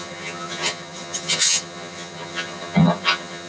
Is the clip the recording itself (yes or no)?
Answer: no